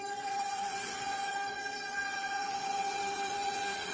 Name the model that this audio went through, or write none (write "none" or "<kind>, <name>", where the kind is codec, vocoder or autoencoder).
vocoder, Vocos